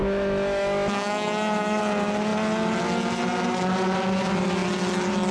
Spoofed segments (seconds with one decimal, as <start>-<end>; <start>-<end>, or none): 0.0-1.8